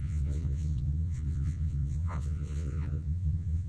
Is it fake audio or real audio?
fake